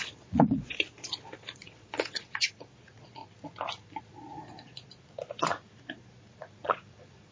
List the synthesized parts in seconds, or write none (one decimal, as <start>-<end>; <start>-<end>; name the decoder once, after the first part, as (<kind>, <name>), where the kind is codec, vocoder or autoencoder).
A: 0.0-3.2 (vocoder, Vocos); 4.0-7.3